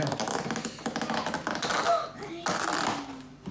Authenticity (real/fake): real